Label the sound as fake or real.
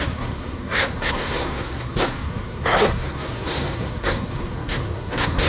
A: fake